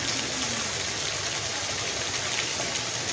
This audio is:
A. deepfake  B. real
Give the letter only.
B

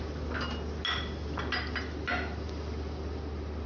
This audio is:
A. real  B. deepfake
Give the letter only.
A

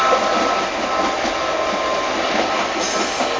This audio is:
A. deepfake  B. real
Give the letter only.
B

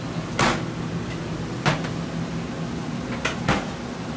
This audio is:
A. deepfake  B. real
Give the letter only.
B